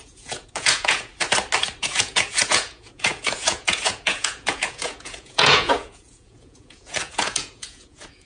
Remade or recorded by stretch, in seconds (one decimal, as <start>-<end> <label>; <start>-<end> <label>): 0.0-1.1 remade; 1.1-1.8 recorded; 1.8-8.3 remade

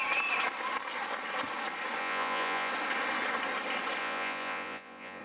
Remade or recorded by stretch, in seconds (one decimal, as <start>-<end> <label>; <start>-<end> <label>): 0.0-2.0 recorded; 2.0-2.7 remade; 2.7-4.0 recorded; 4.0-5.2 remade